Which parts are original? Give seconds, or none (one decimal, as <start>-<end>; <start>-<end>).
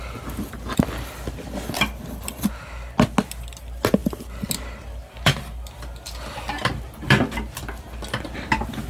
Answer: 0.0-8.9